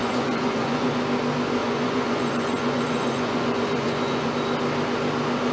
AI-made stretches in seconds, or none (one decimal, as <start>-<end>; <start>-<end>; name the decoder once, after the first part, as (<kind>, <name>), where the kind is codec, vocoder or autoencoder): 0.0-0.9 (vocoder, Vocos); 1.6-4.3